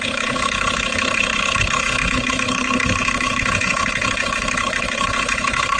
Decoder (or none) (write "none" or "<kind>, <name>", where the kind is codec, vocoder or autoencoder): codec, HILCodec